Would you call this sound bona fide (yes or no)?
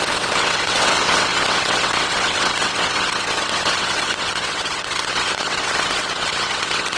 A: no